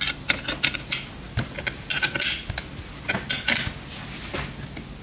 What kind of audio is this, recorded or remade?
recorded